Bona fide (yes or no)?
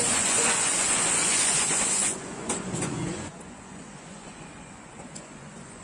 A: no